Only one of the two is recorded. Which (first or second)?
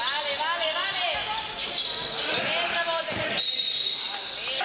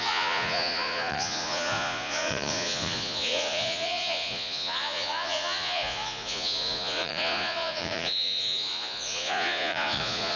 first